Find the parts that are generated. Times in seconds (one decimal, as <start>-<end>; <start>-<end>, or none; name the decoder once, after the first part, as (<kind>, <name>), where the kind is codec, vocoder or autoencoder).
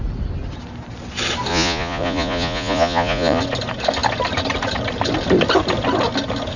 1.5-3.4 (vocoder, Vocos)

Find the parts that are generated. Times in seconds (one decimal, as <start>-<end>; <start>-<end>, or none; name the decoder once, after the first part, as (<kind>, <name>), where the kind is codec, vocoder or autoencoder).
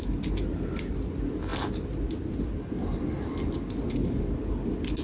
none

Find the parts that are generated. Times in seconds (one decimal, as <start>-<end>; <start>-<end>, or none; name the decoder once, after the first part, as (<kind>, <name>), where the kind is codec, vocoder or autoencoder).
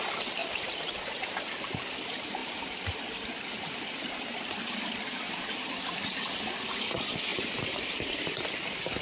0.4-1.4 (vocoder, BigVGAN v2); 2.4-6.3; 7.3-9.0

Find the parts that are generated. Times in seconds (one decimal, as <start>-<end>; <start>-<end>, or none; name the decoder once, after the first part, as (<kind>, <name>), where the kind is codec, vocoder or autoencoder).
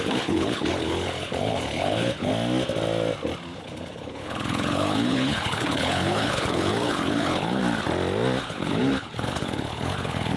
0.0-2.3 (codec, HILCodec); 3.6-7.6; 8.4-10.4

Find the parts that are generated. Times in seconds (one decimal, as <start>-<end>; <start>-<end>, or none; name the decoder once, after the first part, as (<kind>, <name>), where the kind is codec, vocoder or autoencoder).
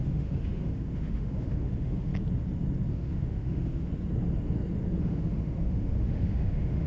0.0-2.1 (autoencoder, DAC-VAE); 2.9-3.9; 5.0-6.9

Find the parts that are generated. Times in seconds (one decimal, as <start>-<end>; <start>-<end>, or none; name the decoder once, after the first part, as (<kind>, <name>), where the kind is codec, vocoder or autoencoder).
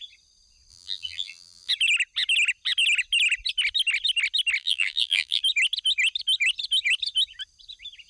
0.7-1.7 (vocoder, BigVGAN v2); 4.6-5.4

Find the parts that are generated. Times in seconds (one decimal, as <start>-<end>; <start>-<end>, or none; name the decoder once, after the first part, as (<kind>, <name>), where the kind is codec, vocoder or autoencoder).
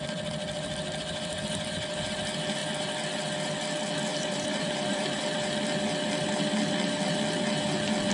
4.1-5.2 (vocoder, BigVGAN v2)